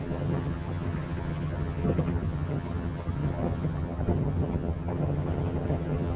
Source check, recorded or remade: remade